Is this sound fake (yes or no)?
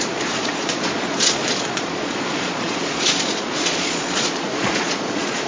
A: yes